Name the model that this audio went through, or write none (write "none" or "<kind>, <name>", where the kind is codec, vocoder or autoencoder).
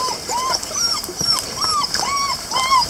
vocoder, BigVGAN v2